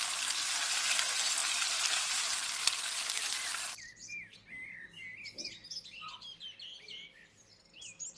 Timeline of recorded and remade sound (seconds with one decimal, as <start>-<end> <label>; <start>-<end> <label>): 0.0-1.4 recorded; 1.4-4.3 remade; 4.3-8.2 recorded